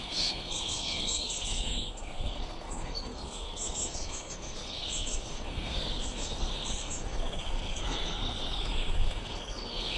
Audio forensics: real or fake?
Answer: fake